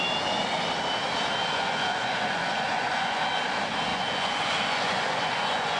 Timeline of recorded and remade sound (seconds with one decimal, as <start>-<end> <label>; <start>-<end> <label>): 0.0-1.4 recorded; 1.4-3.2 remade; 3.2-3.9 recorded; 3.9-5.8 remade